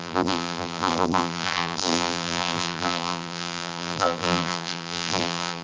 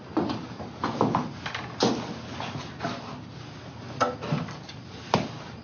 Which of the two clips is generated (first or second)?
first